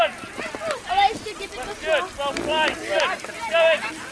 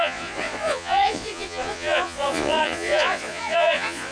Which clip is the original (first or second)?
first